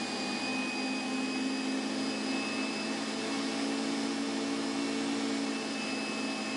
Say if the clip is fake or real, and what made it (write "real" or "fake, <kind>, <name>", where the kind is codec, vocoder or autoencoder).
real